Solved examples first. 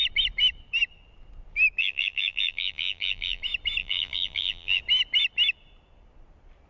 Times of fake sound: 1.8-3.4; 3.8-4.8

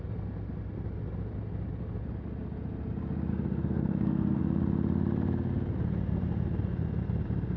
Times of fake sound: 3.3-4.4

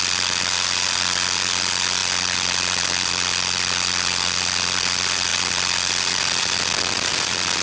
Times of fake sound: none

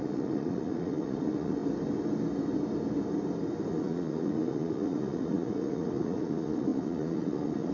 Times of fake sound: 0.0-1.6; 3.7-7.7

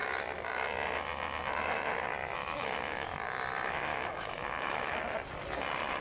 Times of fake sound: 2.4-3.4; 3.9-4.9

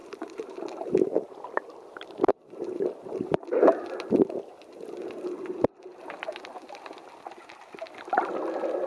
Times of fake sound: 0.0-4.1

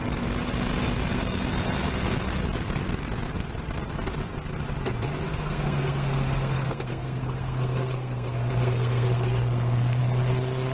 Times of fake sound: 5.3-10.0